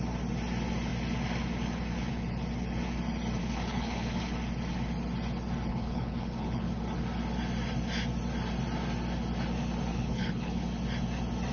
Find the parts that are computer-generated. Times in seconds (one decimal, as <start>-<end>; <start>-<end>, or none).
3.4-4.2; 5.7-6.7; 9.9-10.6